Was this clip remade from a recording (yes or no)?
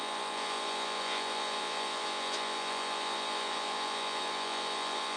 yes